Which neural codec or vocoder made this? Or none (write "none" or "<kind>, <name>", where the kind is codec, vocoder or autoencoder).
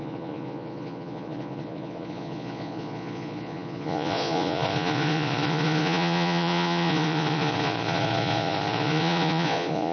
vocoder, Vocos